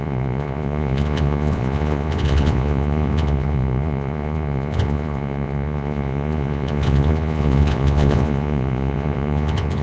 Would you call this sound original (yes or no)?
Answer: no